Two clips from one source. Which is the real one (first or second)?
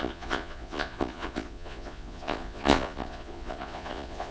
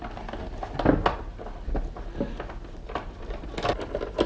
second